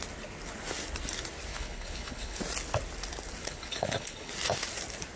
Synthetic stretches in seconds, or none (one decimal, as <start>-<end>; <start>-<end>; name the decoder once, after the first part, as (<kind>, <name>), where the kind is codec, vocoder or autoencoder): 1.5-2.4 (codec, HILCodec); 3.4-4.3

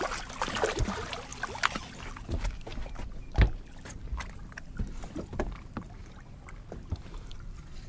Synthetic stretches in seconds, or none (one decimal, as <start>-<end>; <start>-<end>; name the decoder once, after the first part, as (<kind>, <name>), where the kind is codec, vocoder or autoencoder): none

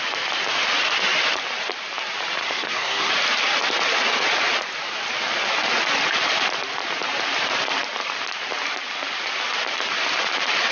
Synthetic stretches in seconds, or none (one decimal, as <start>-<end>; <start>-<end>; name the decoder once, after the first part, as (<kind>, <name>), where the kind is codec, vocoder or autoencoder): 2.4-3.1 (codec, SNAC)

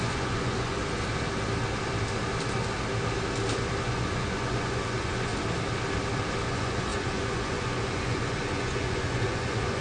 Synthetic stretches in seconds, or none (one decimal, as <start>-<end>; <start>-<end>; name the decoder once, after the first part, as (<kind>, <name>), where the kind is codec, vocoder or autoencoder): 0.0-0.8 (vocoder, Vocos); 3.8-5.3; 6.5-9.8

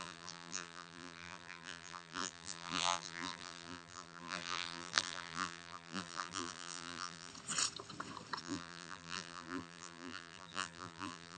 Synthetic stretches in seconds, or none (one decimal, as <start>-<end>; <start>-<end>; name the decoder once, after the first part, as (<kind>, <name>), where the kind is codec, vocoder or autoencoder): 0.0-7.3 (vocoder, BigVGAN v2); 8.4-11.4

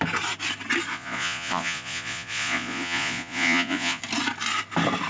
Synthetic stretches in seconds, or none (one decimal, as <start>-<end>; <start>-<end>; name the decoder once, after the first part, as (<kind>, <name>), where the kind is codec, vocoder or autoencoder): 0.9-4.0 (vocoder, Vocos)

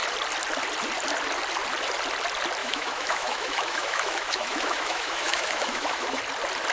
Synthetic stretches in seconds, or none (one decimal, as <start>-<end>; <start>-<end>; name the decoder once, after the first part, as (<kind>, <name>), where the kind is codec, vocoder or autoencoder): 2.6-6.2 (autoencoder, DAC-VAE)